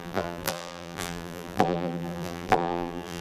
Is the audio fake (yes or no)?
yes